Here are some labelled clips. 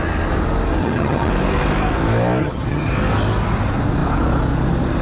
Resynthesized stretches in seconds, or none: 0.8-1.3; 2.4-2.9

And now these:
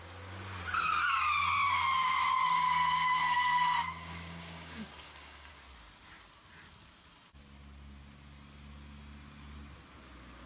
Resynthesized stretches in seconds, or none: 2.3-5.5

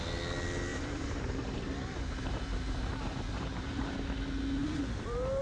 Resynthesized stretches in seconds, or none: 0.7-3.9; 4.6-5.4